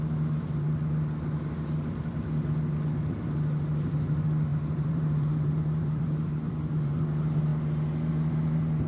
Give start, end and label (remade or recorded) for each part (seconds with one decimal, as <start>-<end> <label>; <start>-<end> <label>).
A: 0.0-4.5 recorded; 4.5-7.0 remade; 7.0-8.9 recorded